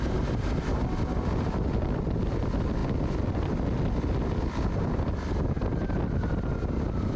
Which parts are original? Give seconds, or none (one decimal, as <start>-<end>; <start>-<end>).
0.0-7.2